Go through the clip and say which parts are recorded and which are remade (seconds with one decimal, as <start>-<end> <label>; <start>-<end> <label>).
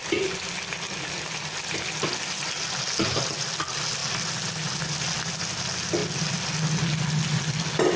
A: 0.0-8.0 recorded